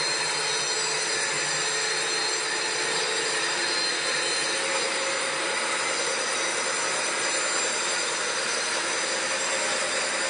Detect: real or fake real